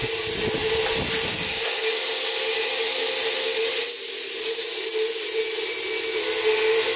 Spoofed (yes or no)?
no